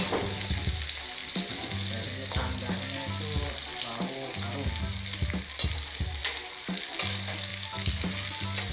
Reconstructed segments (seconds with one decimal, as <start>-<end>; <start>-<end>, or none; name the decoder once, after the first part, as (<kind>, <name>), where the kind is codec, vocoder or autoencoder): none